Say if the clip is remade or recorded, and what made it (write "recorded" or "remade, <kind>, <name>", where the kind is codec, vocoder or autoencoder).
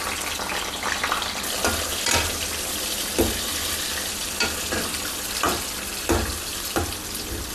recorded